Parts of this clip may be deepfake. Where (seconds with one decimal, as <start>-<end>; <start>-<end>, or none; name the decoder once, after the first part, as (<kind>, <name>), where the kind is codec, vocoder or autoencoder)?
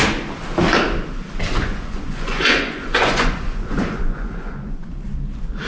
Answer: 1.5-4.9 (vocoder, Vocos)